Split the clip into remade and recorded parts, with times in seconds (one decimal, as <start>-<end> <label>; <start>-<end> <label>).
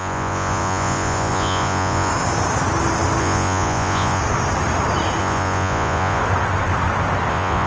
0.0-2.1 remade; 2.1-3.2 recorded; 3.2-4.2 remade; 4.2-5.2 recorded; 5.2-6.2 remade; 6.2-7.3 recorded; 7.3-7.7 remade